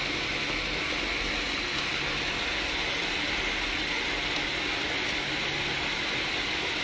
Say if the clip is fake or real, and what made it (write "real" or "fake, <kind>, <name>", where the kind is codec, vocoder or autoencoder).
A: real